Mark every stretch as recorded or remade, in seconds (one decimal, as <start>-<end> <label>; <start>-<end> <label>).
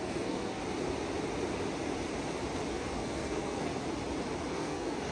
0.0-0.6 remade; 0.6-2.7 recorded; 2.7-3.7 remade; 3.7-4.5 recorded; 4.5-5.1 remade